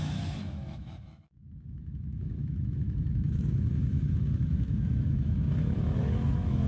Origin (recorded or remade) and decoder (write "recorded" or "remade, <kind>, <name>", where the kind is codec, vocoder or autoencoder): remade, autoencoder, DAC-VAE